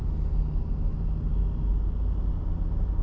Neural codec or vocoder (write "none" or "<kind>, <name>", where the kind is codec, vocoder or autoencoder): none